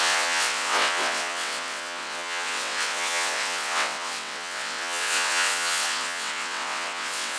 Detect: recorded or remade remade